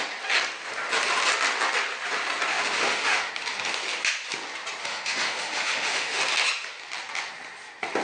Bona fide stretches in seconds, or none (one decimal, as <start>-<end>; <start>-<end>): 0.0-2.5; 3.3-4.8; 6.2-8.0